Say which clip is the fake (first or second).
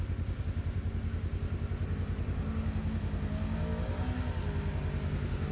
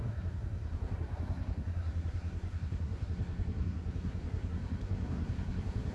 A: second